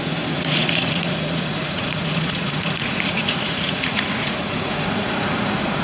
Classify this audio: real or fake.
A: fake